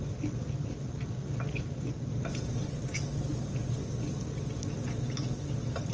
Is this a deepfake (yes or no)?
no